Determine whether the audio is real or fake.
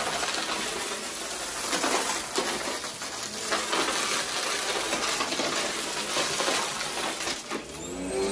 real